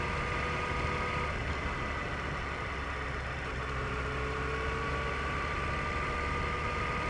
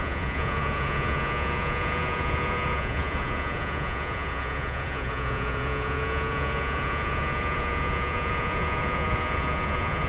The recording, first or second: first